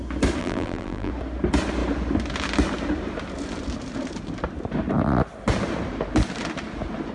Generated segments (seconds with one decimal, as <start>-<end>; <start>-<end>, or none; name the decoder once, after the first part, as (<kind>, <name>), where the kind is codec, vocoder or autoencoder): 0.4-1.1 (vocoder, BigVGAN v2)